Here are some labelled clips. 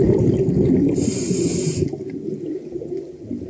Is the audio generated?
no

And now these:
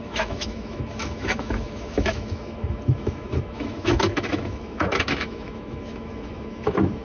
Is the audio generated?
yes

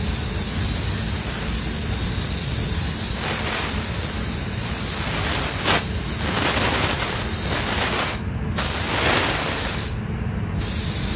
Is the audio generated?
no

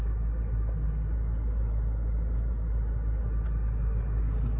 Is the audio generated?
no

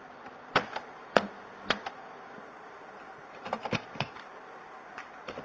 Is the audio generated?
no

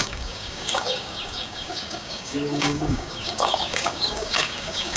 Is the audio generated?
yes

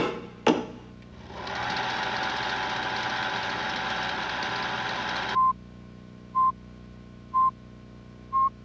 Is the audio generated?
no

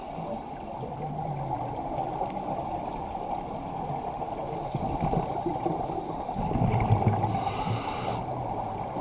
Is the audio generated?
no